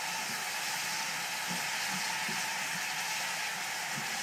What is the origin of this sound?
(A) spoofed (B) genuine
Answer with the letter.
B